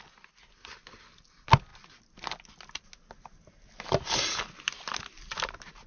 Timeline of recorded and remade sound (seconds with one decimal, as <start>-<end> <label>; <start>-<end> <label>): 0.0-5.9 recorded